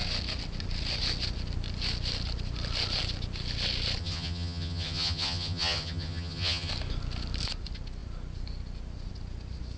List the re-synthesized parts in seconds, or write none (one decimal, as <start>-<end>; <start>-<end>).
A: 4.0-6.7